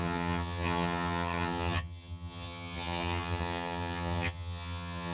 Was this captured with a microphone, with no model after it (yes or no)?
no